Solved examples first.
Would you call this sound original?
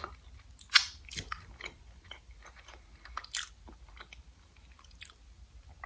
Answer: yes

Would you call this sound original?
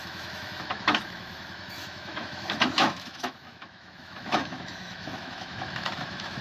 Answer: no